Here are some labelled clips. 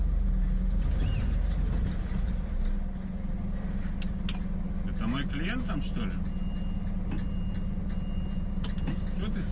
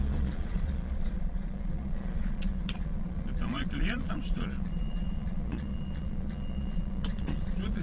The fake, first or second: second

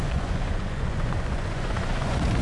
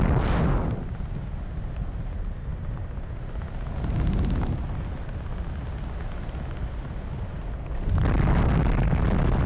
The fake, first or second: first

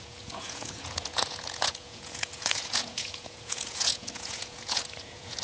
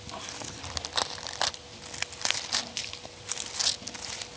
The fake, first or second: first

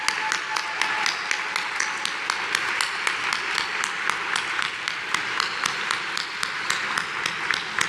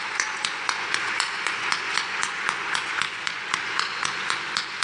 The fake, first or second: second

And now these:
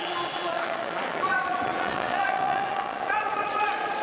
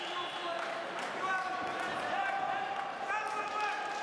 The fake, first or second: first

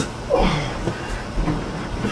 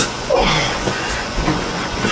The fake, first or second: second